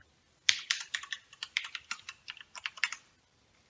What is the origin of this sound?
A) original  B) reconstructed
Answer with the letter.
A